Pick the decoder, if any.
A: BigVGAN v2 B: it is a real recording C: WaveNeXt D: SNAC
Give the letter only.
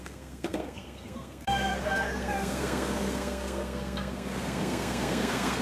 D